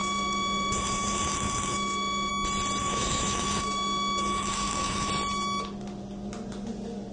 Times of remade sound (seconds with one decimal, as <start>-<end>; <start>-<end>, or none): 0.0-2.3; 2.8-5.1